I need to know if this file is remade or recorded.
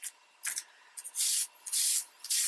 recorded